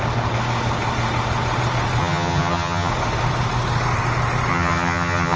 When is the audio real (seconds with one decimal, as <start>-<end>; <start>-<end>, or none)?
0.0-2.0; 2.9-4.5